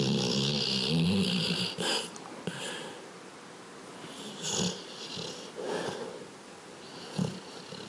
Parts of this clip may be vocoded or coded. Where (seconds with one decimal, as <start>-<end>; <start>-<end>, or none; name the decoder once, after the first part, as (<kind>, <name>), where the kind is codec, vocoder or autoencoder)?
none